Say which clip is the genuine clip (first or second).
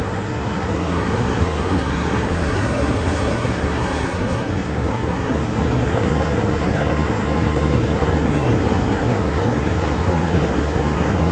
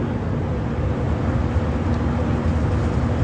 second